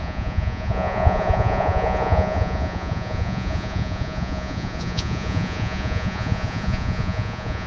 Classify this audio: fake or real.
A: fake